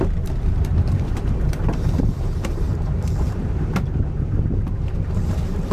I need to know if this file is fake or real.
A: fake